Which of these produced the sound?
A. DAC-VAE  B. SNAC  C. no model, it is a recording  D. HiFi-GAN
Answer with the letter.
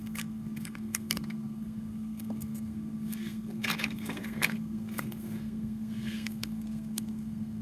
B